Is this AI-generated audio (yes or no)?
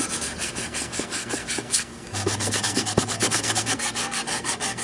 yes